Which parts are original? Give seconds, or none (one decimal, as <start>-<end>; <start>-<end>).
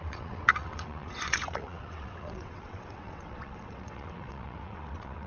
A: none